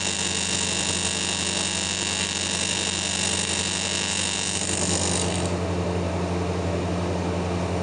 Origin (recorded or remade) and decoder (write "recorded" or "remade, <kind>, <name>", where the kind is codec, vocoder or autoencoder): recorded